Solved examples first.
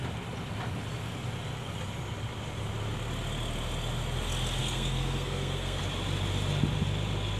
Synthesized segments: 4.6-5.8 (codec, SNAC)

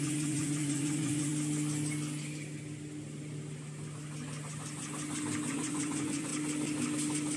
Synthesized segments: 0.0-1.3 (vocoder, Vocos); 5.5-6.3

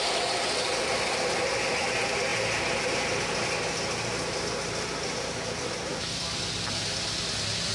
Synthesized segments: none